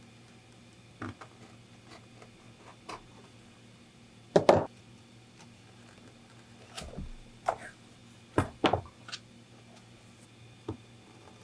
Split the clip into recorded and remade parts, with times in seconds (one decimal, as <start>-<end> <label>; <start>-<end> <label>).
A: 0.0-11.4 recorded